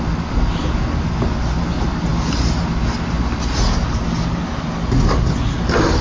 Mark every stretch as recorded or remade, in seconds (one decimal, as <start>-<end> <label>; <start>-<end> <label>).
0.0-6.0 recorded